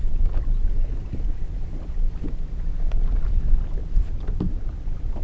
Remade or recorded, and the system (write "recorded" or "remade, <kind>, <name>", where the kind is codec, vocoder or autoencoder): recorded